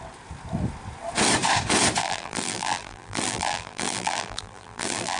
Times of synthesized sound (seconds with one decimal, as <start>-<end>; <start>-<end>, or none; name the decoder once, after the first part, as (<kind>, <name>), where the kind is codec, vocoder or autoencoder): 2.0-5.2 (vocoder, BigVGAN v2)